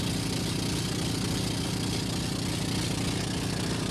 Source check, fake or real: real